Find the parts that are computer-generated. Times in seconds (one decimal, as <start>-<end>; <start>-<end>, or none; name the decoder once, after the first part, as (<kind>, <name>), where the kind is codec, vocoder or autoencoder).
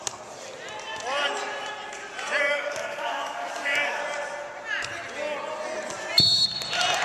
2.4-4.0 (codec, DAC)